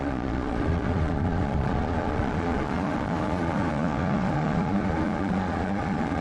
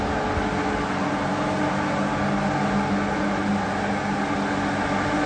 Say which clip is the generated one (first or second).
first